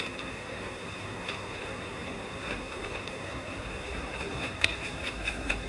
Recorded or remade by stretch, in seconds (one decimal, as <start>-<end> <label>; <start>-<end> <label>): 0.0-5.7 remade

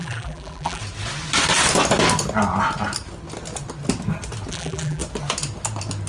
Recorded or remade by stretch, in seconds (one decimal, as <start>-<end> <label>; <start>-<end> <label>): 0.0-0.8 remade; 0.8-4.5 recorded; 4.5-5.0 remade; 5.0-6.1 recorded

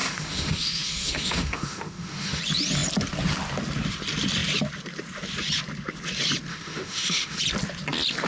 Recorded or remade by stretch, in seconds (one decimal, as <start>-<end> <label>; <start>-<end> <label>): 0.0-2.4 remade; 2.4-6.5 recorded; 6.5-7.4 remade; 7.4-8.3 recorded

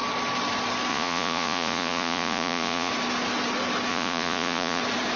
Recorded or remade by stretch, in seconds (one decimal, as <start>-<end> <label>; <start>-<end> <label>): 0.0-0.9 recorded; 0.9-2.9 remade; 2.9-3.9 recorded; 3.9-4.8 remade; 4.8-5.2 recorded

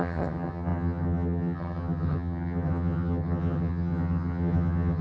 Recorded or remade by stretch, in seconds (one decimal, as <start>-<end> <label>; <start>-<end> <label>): 0.0-5.0 remade

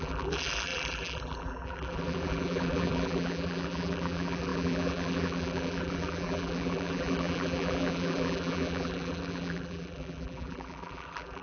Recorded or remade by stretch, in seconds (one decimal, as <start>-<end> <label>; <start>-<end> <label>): 0.0-11.4 remade

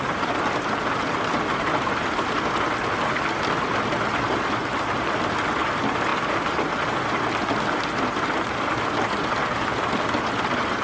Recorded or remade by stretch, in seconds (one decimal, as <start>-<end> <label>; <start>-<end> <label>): 0.0-10.8 recorded

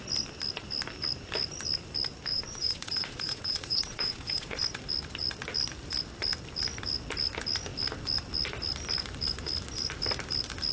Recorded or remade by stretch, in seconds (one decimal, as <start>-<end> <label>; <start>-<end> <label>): 0.0-2.3 recorded; 2.3-4.6 remade; 4.6-10.7 recorded